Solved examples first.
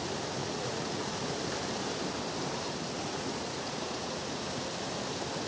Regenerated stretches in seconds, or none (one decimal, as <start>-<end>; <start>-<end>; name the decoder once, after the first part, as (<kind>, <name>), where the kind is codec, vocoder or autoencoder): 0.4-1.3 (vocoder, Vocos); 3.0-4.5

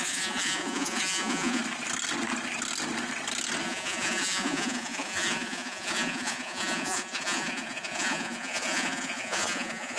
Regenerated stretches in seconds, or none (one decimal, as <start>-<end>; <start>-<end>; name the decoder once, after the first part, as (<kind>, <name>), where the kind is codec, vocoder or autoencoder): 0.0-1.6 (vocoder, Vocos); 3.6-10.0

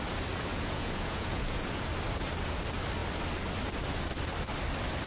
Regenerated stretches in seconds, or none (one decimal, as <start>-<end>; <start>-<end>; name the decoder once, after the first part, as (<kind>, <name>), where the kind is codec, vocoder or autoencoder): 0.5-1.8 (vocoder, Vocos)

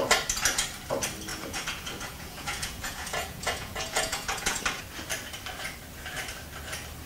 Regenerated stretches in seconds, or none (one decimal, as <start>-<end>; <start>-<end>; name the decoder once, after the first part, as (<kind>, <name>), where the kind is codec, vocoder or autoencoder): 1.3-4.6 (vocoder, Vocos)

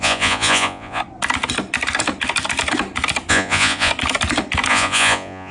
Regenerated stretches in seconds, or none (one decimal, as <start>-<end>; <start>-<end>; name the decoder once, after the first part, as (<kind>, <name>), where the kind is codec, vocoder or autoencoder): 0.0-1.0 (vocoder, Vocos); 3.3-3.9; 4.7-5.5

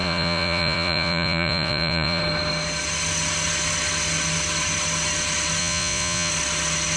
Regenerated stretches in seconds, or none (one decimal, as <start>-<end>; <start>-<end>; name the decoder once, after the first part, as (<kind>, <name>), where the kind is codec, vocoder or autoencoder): 0.0-2.2 (vocoder, Vocos); 5.6-6.3